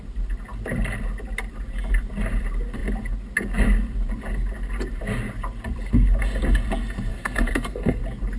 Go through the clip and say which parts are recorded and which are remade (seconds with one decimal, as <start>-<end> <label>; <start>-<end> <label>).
0.0-7.1 recorded; 7.1-8.0 remade; 8.0-8.4 recorded